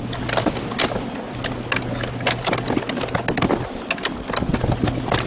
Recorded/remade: recorded